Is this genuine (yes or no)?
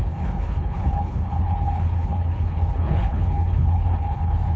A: no